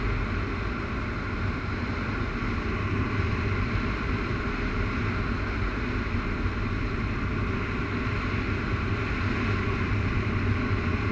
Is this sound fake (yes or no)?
no